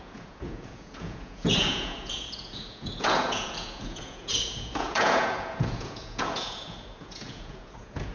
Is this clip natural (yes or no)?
no